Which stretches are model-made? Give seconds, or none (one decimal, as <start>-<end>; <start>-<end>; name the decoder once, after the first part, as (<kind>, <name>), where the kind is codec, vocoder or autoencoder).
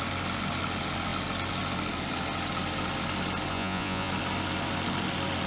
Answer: 3.5-4.1 (vocoder, Vocos)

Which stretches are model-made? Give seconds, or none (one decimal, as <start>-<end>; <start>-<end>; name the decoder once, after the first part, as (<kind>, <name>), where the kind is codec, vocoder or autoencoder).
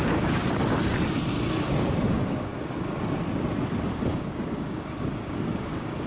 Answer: 0.0-0.4 (codec, DAC); 2.1-2.5; 4.1-6.1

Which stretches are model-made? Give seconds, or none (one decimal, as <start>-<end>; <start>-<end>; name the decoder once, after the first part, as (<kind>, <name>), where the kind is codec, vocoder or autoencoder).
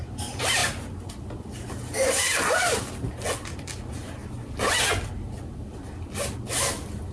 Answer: none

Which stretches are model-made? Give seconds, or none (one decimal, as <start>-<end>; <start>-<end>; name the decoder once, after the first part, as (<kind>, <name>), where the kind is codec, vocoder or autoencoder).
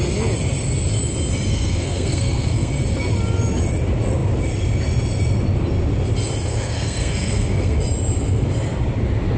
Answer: 1.5-2.7 (codec, SNAC); 6.5-7.8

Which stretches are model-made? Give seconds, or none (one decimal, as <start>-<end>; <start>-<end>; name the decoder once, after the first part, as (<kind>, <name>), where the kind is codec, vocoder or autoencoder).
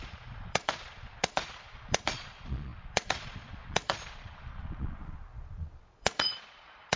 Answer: 0.0-7.0 (vocoder, Vocos)